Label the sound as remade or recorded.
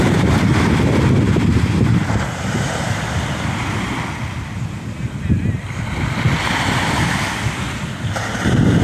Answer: recorded